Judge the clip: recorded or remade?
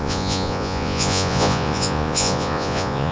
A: remade